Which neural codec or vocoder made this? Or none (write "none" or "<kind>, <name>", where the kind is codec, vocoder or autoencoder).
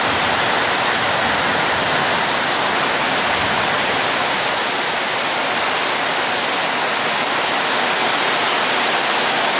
none